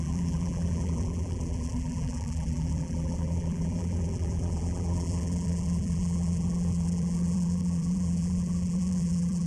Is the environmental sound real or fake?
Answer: fake